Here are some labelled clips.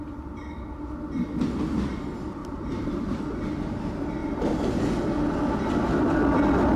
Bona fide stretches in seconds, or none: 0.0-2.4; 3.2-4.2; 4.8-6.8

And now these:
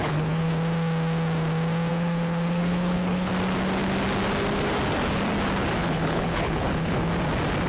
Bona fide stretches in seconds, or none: 0.5-1.9; 3.3-5.8; 7.0-7.7

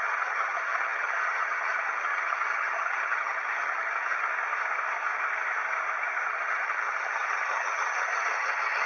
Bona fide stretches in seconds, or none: 4.3-6.3

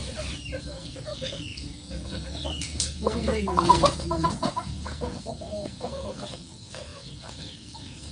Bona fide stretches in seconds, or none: 0.0-0.6

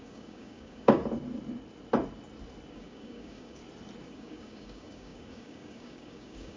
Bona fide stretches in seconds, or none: 1.0-2.7; 3.6-4.1

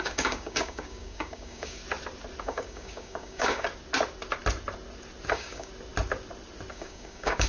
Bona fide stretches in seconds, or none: 1.8-2.4; 3.7-5.3; 5.7-6.7

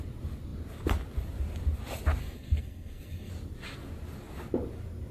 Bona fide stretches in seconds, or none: 0.0-2.2; 3.3-5.1

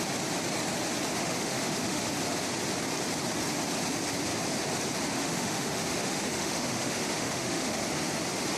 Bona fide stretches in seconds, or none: 0.0-1.2; 2.1-5.2; 7.8-8.6